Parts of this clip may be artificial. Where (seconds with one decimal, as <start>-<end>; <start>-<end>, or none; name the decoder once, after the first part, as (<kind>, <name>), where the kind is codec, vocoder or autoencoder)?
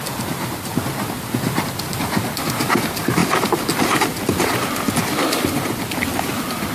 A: none